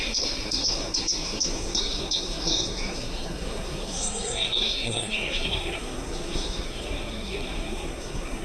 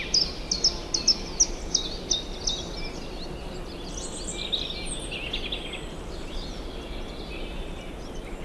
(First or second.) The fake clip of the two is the first